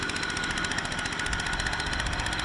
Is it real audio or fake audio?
real